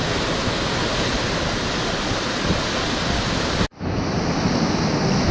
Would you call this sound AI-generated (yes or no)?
no